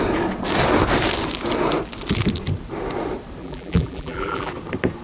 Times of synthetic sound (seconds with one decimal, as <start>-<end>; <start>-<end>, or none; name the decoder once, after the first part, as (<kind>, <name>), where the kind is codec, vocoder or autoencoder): 3.4-4.5 (vocoder, BigVGAN v2)